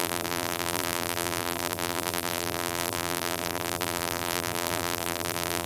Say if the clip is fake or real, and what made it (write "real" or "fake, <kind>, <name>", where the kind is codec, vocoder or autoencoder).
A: fake, vocoder, BigVGAN v2